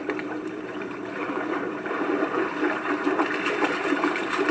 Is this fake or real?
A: fake